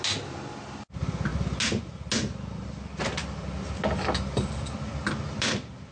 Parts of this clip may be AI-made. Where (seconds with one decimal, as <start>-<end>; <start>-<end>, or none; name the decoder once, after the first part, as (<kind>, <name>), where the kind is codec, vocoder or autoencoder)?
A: none